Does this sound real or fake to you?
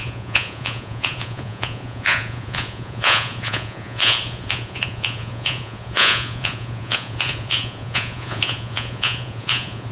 fake